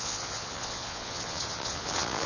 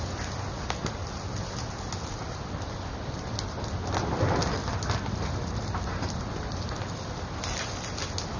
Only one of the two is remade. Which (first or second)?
first